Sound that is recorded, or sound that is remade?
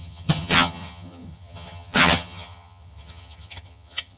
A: remade